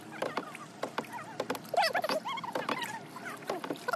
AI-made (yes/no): no